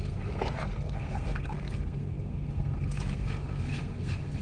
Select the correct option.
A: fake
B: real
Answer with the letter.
A